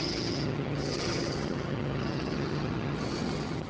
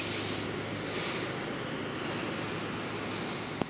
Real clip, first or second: second